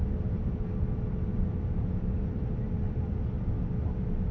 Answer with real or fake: real